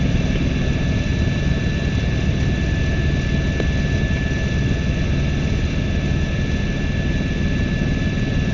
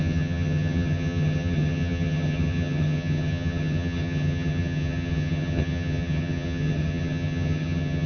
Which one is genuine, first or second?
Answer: first